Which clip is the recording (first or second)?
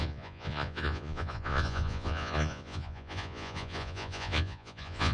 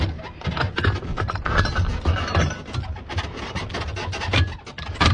second